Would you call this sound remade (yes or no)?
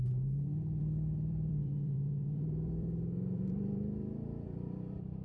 yes